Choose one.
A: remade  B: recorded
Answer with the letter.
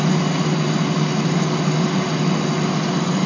B